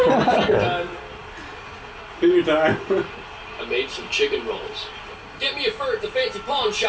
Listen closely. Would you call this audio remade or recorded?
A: recorded